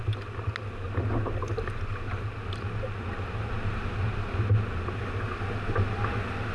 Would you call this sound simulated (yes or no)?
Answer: no